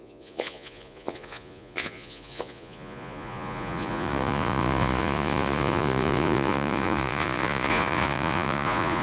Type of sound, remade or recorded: remade